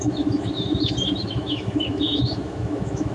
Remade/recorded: remade